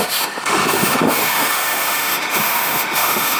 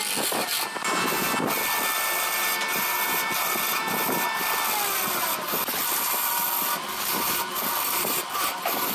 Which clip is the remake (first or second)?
first